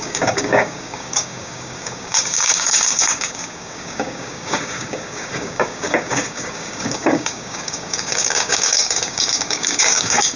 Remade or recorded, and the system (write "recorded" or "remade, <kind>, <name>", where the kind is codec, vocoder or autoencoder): remade, codec, DAC